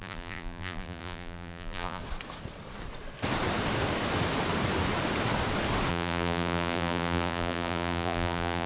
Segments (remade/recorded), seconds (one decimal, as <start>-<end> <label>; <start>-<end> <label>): 0.0-2.0 remade; 2.0-5.9 recorded; 5.9-8.7 remade